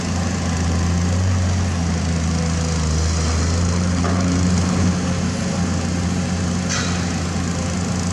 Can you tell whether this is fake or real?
real